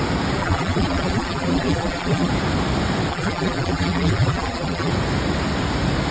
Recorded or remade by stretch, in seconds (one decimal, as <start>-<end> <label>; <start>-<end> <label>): 0.0-0.4 recorded; 0.4-2.3 remade; 2.3-3.1 recorded; 3.1-4.9 remade; 4.9-6.1 recorded